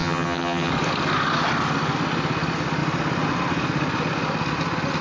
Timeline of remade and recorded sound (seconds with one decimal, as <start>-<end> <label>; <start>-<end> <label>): 0.0-0.7 remade; 0.7-5.0 recorded

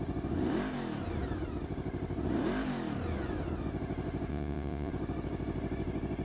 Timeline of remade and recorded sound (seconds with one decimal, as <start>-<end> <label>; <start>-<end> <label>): 0.0-4.3 recorded; 4.3-4.9 remade; 4.9-6.2 recorded

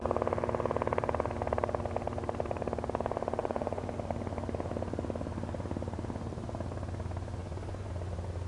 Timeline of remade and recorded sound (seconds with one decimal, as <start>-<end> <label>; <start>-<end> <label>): 0.0-3.4 recorded; 3.4-3.9 remade; 3.9-7.4 recorded; 7.4-7.9 remade; 7.9-8.5 recorded

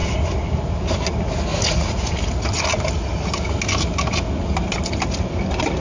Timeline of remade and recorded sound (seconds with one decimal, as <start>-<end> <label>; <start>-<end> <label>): 0.0-1.5 recorded; 1.5-2.1 remade; 2.1-5.8 recorded

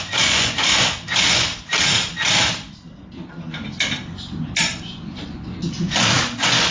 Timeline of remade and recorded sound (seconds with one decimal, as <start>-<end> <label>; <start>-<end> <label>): 0.0-1.5 remade; 1.5-4.6 recorded; 4.6-5.6 remade; 5.6-6.1 recorded; 6.1-6.7 remade

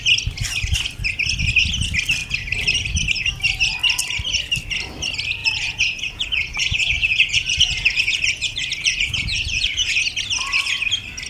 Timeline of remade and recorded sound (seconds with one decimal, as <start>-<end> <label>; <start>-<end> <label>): 0.0-5.4 recorded; 5.4-10.0 remade; 10.0-11.3 recorded

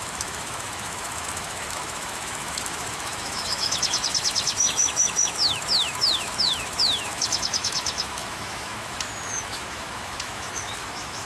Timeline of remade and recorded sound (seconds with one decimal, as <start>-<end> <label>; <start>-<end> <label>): 0.0-11.3 remade

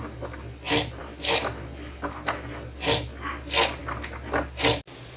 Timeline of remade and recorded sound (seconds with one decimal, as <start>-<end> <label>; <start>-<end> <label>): 0.0-5.2 recorded